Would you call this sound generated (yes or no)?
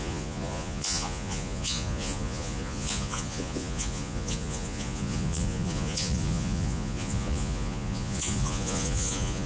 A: yes